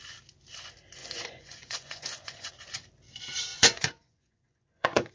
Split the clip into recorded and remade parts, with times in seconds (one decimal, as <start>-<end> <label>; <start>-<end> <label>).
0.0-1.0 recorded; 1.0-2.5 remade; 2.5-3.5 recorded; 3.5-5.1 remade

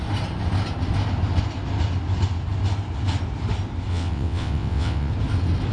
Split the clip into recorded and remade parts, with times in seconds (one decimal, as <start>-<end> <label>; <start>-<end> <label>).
0.0-3.9 recorded; 3.9-5.1 remade; 5.1-5.7 recorded

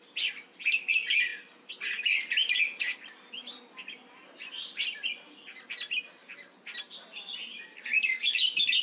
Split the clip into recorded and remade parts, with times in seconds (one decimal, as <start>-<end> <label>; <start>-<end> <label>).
0.0-6.2 remade; 6.2-6.8 recorded; 6.8-8.8 remade

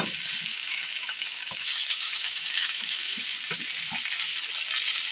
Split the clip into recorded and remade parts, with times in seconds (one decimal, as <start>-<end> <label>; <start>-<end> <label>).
0.0-0.5 recorded; 0.5-3.2 remade; 3.2-5.1 recorded

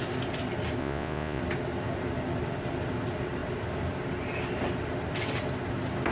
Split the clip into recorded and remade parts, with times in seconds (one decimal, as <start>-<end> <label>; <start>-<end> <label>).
0.0-0.8 recorded; 0.8-1.4 remade; 1.4-6.1 recorded

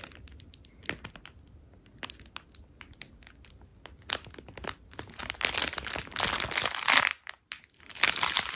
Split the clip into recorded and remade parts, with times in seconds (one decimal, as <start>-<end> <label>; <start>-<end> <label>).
0.0-8.6 recorded

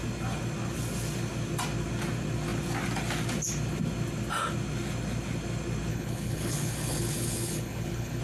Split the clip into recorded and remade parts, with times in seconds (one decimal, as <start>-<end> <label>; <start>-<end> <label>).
0.0-5.9 recorded; 5.9-8.2 remade